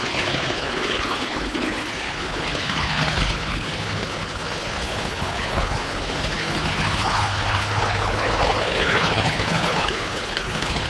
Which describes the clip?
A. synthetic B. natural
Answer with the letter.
A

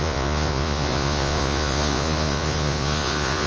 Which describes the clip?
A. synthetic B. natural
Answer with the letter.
A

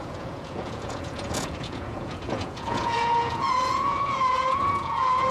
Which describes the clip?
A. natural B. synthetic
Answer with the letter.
B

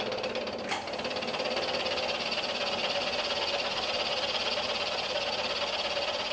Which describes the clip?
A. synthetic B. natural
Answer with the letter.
B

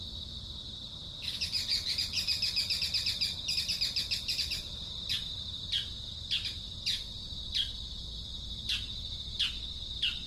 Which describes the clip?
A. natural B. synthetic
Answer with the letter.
A